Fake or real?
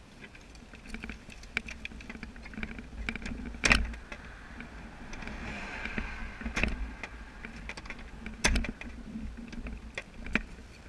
real